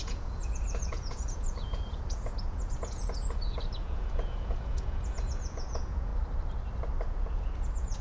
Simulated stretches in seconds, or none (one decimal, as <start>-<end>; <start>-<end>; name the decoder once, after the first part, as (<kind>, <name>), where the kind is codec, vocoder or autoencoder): 0.0-6.1 (vocoder, Vocos); 7.0-8.0